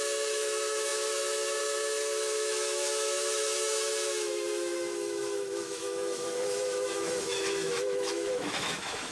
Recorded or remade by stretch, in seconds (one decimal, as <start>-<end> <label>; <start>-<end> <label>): 0.0-9.1 remade